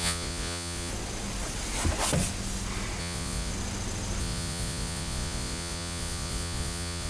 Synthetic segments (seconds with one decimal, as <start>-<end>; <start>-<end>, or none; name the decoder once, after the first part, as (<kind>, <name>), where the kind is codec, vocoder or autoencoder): 0.0-0.9 (vocoder, Vocos); 3.0-3.5; 4.2-7.1